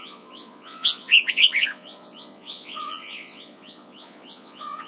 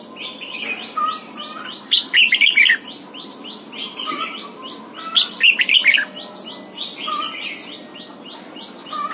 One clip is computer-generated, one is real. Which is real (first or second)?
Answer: second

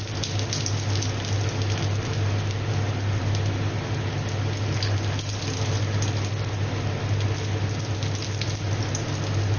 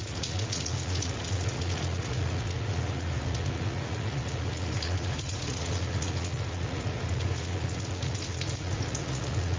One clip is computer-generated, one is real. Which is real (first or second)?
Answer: first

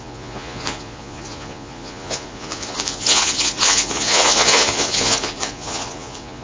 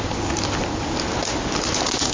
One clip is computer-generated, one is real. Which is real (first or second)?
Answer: second